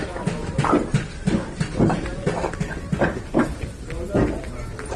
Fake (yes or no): no